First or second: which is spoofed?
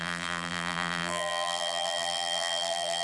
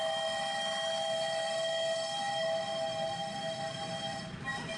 first